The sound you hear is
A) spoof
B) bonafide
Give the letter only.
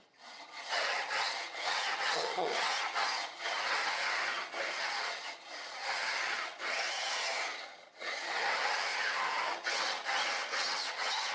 A